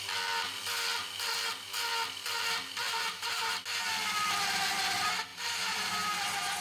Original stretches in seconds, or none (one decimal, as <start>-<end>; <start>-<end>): 0.0-2.8; 3.5-5.3